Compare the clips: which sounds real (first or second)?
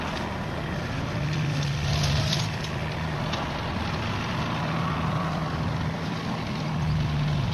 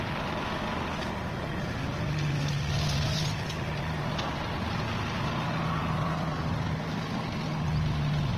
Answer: second